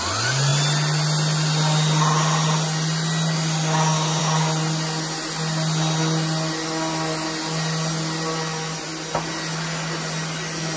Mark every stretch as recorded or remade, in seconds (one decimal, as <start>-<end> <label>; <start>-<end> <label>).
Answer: 0.0-10.8 recorded